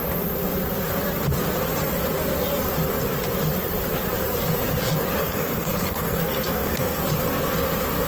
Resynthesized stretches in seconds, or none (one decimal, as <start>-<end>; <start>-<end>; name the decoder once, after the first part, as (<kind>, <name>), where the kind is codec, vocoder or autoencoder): 5.2-7.0 (codec, SNAC)